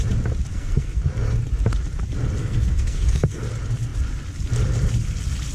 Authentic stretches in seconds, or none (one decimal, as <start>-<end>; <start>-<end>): 0.0-0.5; 1.0-2.4; 3.4-5.5